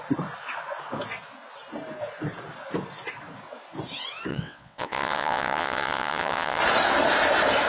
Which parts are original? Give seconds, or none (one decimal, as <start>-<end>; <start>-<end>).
0.0-4.3; 6.6-7.7